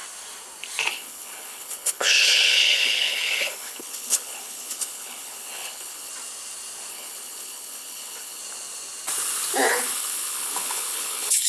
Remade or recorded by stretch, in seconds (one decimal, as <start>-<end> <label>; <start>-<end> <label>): 0.0-0.9 recorded; 0.9-6.1 remade; 6.1-6.9 recorded; 6.9-8.4 remade; 8.4-9.7 recorded; 9.7-11.5 remade